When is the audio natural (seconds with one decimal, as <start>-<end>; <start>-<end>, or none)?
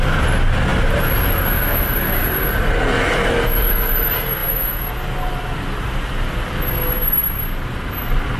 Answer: 0.0-4.4; 4.9-8.4